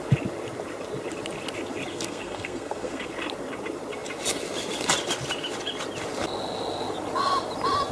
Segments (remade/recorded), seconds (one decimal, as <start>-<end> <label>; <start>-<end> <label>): 0.0-1.9 recorded; 1.9-3.1 remade; 3.1-7.9 recorded